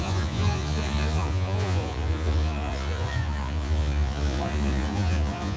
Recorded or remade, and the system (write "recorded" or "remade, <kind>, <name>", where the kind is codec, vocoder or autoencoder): remade, vocoder, Vocos